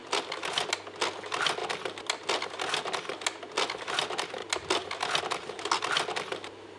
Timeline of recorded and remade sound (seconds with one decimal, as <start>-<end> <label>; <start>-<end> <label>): 0.0-6.8 recorded